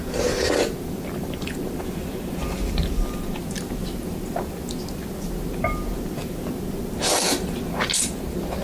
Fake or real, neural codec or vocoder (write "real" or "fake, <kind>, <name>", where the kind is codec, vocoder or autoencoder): real